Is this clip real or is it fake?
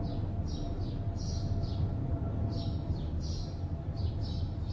real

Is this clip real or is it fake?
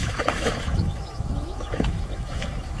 fake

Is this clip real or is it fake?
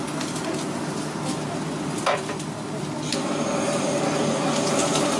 real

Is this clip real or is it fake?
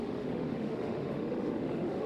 fake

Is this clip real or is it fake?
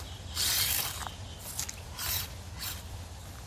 real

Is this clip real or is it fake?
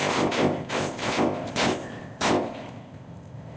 fake